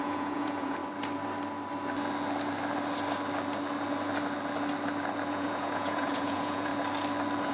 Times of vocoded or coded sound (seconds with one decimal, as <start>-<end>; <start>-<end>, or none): 0.0-0.8; 5.3-6.7